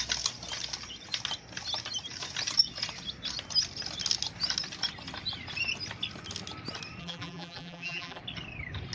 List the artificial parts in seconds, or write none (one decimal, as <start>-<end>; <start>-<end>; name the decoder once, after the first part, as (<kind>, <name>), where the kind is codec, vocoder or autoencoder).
7.0-8.2 (vocoder, BigVGAN v2)